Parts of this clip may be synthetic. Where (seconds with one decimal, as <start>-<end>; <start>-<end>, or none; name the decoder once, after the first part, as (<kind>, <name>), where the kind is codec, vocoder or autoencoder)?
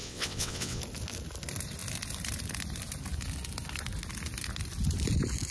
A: 0.0-0.8 (vocoder, WaveNeXt)